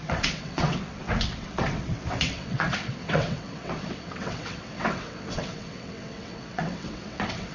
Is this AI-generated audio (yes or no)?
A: yes